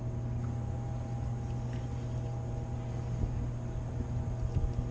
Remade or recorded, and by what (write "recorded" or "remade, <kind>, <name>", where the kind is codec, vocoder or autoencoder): recorded